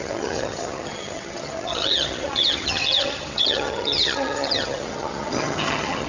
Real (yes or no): no